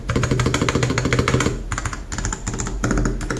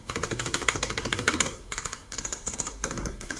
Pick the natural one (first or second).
first